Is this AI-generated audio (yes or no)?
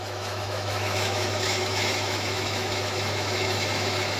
yes